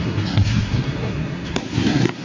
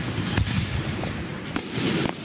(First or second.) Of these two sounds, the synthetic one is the first